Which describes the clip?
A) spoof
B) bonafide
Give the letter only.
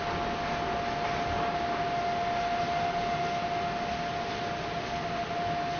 B